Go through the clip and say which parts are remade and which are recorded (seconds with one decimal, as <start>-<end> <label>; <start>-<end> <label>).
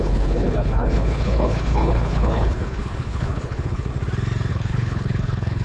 0.0-3.9 remade; 3.9-4.5 recorded; 4.5-5.6 remade